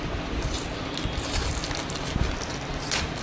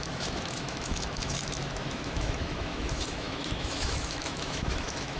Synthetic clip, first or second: second